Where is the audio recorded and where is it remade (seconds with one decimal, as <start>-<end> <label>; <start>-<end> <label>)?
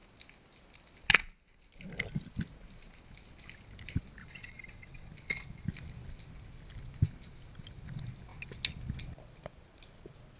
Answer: 0.0-4.2 recorded; 4.2-5.1 remade; 5.1-10.4 recorded